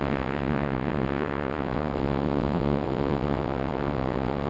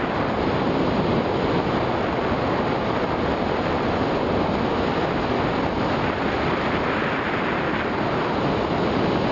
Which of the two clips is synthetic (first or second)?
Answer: first